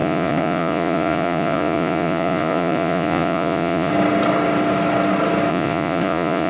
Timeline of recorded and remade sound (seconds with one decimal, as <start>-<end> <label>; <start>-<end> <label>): 0.0-3.9 remade; 3.9-5.5 recorded; 5.5-6.5 remade